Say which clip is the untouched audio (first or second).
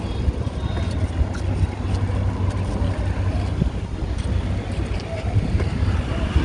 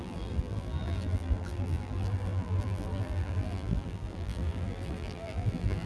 first